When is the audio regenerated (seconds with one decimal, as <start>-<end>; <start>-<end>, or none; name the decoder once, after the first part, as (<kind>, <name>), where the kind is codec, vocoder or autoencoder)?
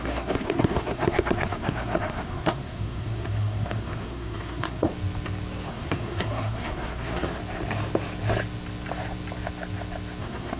0.0-4.9 (codec, SNAC); 5.7-7.4; 10.2-10.6